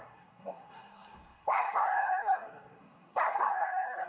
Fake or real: fake